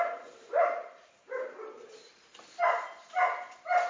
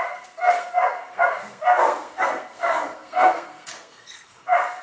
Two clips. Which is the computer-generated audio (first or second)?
second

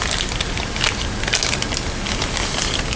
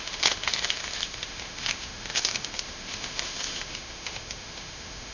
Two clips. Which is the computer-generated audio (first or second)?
second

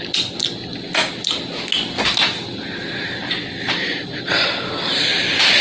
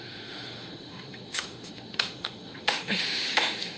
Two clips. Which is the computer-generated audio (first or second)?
second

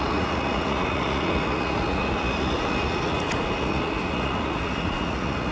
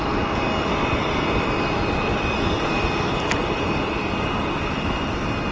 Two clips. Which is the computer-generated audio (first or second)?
first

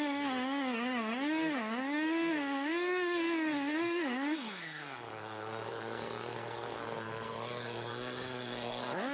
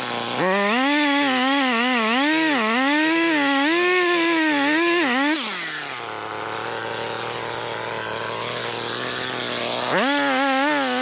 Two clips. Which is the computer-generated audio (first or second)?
first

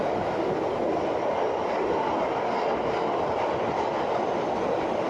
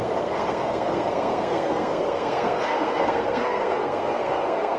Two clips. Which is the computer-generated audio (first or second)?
second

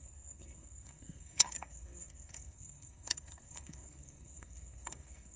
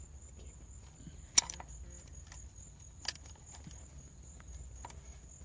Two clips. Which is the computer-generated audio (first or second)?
first